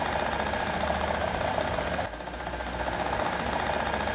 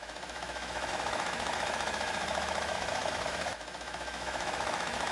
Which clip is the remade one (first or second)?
second